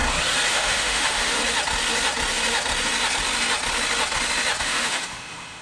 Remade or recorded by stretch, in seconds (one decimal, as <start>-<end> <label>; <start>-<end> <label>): 0.0-0.5 recorded; 0.5-1.4 remade; 1.4-4.6 recorded; 4.6-5.6 remade